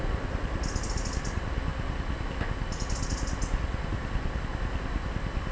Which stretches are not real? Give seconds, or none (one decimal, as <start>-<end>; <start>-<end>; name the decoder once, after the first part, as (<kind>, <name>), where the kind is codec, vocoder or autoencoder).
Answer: none